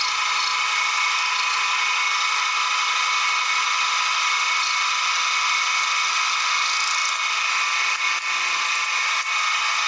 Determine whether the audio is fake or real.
real